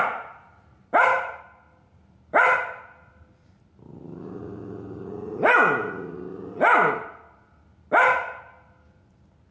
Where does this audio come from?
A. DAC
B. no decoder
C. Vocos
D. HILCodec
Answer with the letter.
B